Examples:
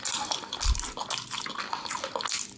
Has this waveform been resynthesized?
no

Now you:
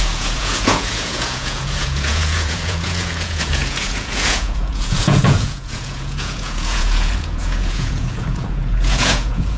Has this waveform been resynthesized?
yes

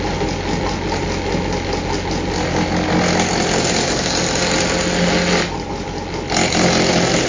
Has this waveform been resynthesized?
no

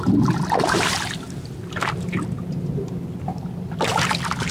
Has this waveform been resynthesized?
no